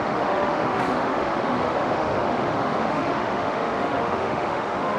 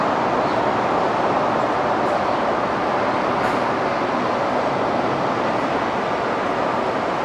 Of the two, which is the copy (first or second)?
first